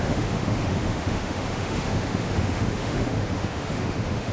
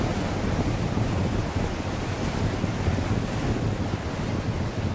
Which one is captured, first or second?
second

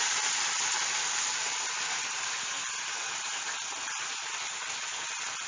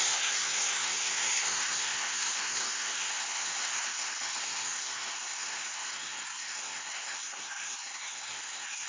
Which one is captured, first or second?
first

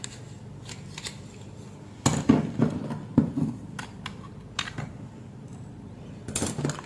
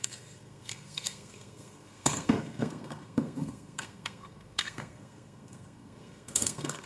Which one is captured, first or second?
first